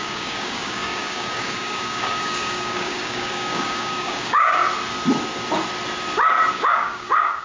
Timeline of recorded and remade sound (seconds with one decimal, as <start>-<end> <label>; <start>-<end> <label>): 0.0-4.6 remade; 4.6-6.5 recorded; 6.5-7.4 remade